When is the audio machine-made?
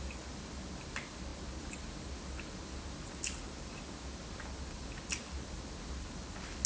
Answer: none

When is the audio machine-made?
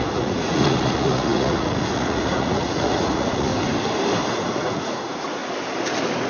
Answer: 0.0-3.5 (vocoder, Vocos); 4.3-5.4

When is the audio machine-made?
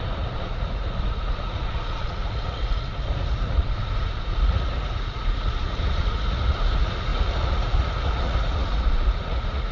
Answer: 0.0-9.7 (vocoder, Vocos)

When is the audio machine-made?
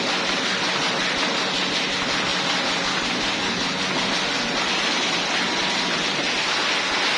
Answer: none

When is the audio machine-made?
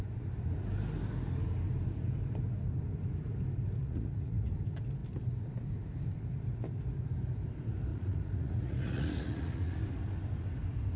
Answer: 3.8-4.5 (vocoder, Vocos); 7.9-9.8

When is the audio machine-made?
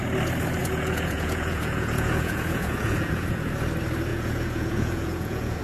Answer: 0.6-3.5 (vocoder, Vocos); 4.1-5.6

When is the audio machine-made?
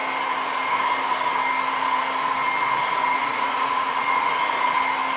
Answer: 3.2-4.3 (vocoder, Vocos)